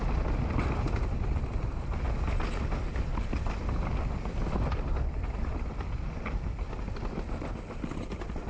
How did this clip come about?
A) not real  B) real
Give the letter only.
B